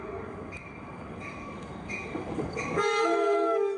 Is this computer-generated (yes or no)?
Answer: yes